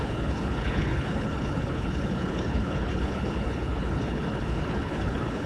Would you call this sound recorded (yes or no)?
no